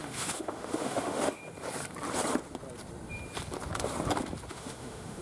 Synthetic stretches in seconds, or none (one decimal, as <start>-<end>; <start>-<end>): 0.0-1.4; 4.5-5.2